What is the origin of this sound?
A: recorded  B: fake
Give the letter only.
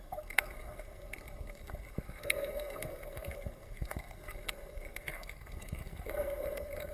B